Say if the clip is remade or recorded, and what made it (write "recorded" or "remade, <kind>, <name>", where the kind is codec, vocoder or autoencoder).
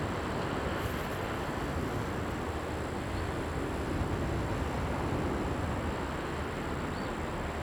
recorded